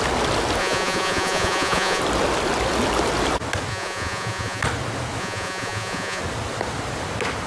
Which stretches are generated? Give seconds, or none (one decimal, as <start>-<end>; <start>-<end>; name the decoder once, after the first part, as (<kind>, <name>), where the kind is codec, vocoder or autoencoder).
0.6-2.0 (vocoder, Vocos); 3.7-4.6; 5.2-6.2